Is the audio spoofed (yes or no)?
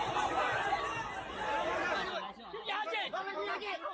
no